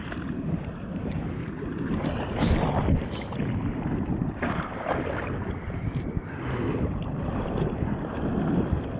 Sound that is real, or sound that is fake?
real